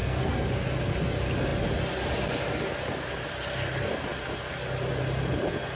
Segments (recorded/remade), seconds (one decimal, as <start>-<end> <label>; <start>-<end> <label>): 0.0-0.5 remade; 0.5-5.8 recorded